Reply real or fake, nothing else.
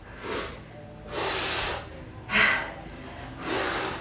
real